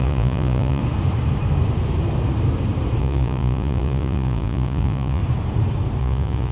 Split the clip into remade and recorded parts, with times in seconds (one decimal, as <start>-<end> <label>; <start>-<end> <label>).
0.0-0.8 remade; 0.8-3.0 recorded; 3.0-5.2 remade; 5.2-6.0 recorded; 6.0-6.5 remade